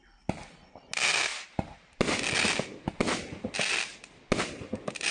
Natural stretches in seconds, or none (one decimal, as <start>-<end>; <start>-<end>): 0.0-5.1